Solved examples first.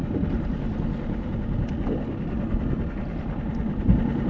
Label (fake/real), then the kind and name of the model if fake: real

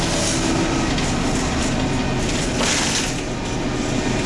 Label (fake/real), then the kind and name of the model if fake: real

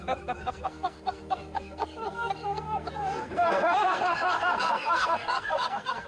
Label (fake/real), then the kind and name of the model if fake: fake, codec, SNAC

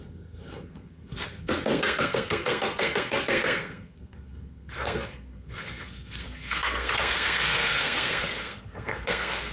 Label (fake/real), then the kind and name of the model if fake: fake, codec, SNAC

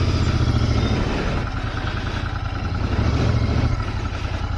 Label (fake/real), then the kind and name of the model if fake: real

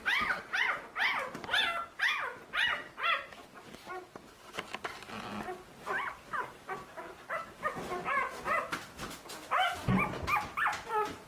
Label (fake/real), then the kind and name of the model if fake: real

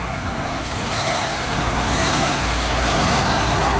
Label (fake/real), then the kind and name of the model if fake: fake, codec, SNAC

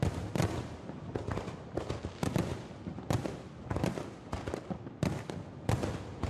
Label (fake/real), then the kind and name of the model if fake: real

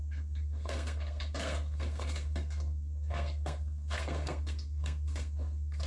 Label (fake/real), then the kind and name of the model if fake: fake, codec, SNAC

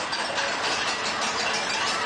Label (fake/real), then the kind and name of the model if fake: real